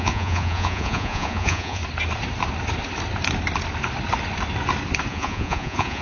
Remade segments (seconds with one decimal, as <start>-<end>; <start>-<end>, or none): 0.0-1.8; 5.1-6.0